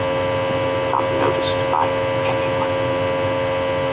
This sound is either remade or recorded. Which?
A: recorded